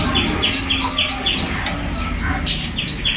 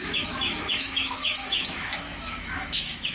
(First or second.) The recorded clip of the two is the first